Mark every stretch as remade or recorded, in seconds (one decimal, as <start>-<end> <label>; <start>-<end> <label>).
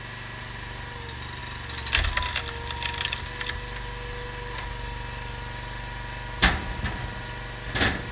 0.0-8.1 recorded